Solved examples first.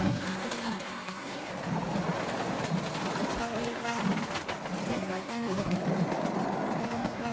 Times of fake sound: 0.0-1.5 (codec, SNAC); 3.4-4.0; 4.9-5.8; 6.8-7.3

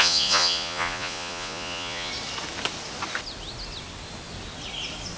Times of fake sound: 0.0-2.1 (vocoder, Vocos)